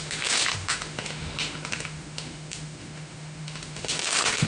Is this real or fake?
fake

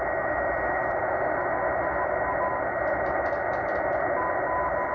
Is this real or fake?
real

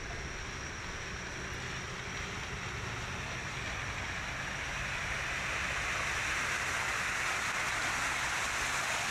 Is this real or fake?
real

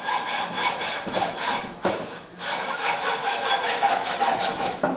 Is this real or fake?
fake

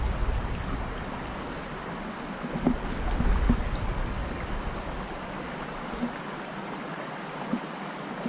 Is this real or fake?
real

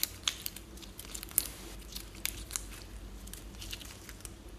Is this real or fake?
real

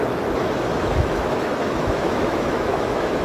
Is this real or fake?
fake